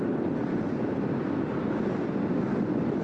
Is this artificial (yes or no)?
no